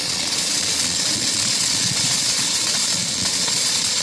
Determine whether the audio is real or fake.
fake